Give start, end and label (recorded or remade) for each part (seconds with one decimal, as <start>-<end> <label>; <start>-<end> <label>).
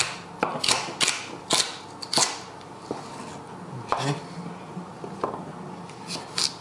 0.0-6.6 recorded